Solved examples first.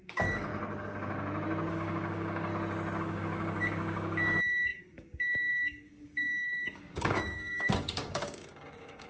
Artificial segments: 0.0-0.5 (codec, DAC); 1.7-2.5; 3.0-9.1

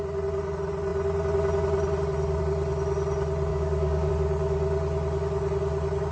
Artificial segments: 3.5-4.1 (codec, DAC)

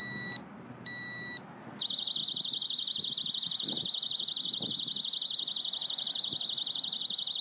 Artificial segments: none

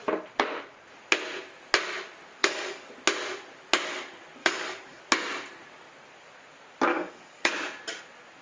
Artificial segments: 2.4-2.9 (codec, DAC); 4.4-5.0; 6.9-7.5